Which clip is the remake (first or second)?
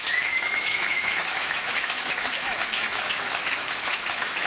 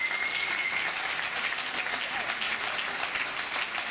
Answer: first